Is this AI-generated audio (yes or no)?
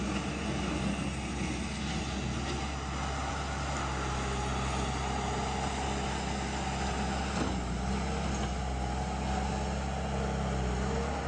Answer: no